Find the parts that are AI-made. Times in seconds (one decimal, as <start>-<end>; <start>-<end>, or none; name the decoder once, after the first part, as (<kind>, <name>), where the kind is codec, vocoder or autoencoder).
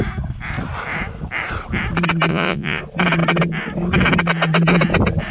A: 2.3-2.8 (vocoder, Vocos)